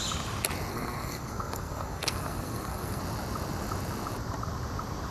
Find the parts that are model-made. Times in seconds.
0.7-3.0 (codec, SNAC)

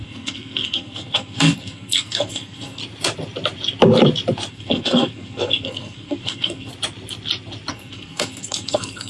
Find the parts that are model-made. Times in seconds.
0.0-2.8 (codec, SNAC); 4.5-6.7; 7.7-9.1

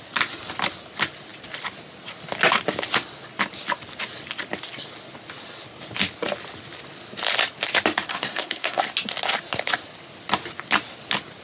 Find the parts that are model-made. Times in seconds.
8.1-8.8 (codec, SNAC)

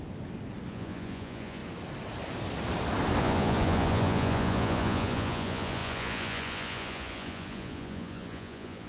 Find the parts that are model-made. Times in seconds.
0.7-1.6 (vocoder, Vocos); 3.2-8.9

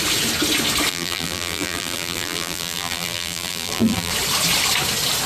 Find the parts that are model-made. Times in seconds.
0.9-4.1 (vocoder, BigVGAN v2)

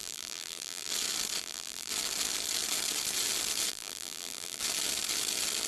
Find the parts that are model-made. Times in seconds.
0.0-0.9 (vocoder, BigVGAN v2); 1.4-1.9; 3.7-4.6

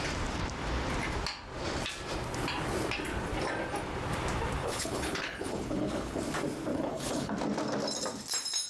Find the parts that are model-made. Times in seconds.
4.6-6.2 (codec, HILCodec); 6.7-7.3

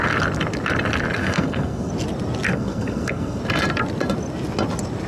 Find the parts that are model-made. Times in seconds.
1.2-1.9 (codec, SNAC); 2.5-3.4